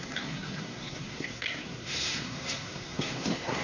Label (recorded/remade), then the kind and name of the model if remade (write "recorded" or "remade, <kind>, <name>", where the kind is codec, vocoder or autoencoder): remade, codec, SNAC